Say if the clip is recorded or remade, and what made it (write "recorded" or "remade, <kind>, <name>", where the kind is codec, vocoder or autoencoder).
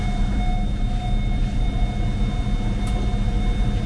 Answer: recorded